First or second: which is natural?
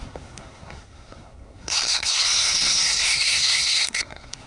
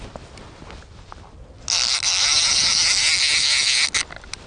second